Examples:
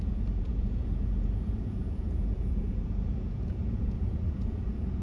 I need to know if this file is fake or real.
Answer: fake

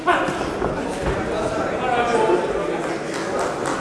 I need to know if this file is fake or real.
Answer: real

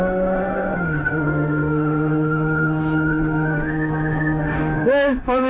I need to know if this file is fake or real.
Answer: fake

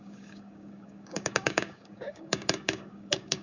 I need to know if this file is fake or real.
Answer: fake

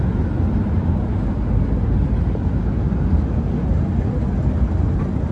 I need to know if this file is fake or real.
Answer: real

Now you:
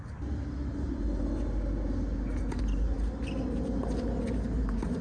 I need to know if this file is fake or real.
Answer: real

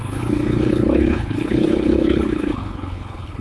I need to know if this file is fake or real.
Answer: fake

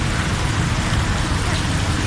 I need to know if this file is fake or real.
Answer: real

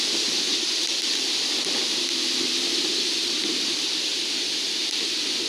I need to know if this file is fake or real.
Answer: fake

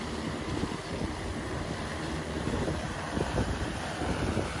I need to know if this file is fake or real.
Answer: fake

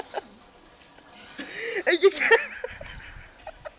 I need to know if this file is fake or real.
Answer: real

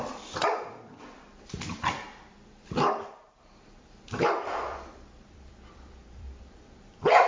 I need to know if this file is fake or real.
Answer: fake